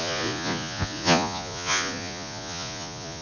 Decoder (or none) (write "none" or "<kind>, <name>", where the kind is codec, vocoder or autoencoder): vocoder, Vocos